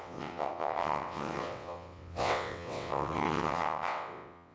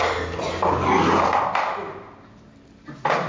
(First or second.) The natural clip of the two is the second